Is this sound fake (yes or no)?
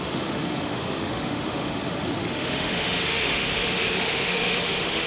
yes